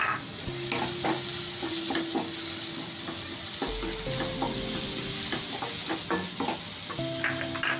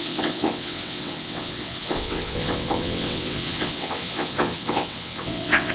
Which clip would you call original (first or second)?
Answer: first